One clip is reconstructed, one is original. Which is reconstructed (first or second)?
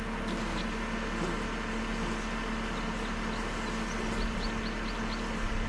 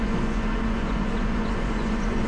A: second